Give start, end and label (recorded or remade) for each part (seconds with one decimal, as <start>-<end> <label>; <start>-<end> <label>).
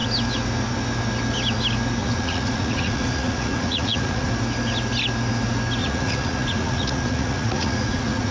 0.0-2.0 recorded; 2.0-4.3 remade; 4.3-5.8 recorded; 5.8-8.3 remade